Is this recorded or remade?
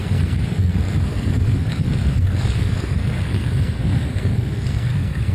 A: remade